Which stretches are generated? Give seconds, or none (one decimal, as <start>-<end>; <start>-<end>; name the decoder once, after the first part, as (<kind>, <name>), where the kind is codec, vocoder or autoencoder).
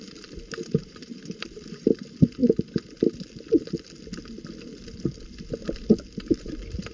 0.0-2.4 (vocoder, BigVGAN v2); 6.2-6.9